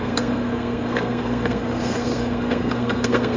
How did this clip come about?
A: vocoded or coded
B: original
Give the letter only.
A